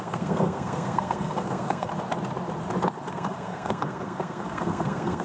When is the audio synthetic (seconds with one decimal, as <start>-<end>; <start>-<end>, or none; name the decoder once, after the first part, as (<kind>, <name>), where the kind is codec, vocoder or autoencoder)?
0.0-1.9 (codec, SNAC); 3.1-5.2